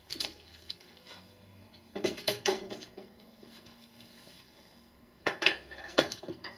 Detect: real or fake fake